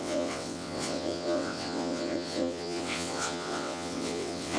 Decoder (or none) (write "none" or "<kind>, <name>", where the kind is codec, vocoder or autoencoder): vocoder, WaveNeXt